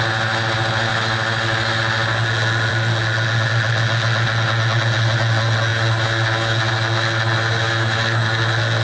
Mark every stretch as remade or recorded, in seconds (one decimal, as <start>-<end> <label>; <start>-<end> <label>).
0.0-8.8 recorded